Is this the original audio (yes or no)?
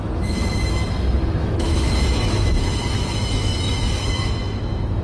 no